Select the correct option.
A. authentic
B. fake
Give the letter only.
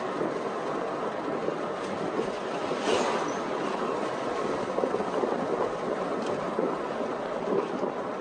A